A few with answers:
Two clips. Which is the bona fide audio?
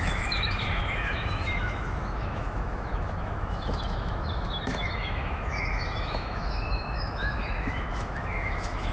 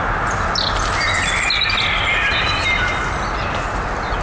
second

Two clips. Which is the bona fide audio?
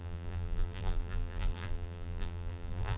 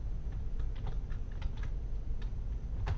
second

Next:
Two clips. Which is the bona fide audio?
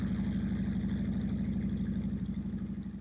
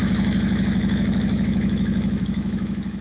first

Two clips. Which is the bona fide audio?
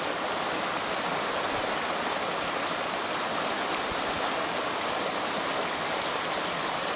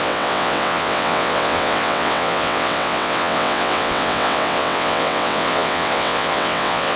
first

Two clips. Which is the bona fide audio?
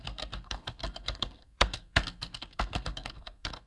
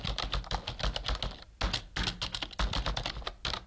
second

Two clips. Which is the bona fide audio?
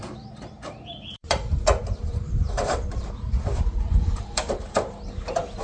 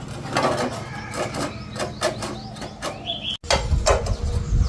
second